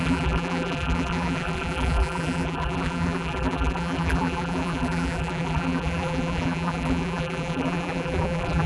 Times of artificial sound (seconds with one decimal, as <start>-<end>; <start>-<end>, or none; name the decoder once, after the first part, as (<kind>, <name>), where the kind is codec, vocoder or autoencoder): 0.0-8.7 (vocoder, BigVGAN v2)